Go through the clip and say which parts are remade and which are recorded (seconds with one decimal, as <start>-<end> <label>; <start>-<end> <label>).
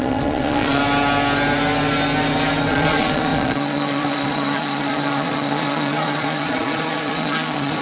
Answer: 0.0-0.8 remade; 0.8-2.7 recorded; 2.7-7.8 remade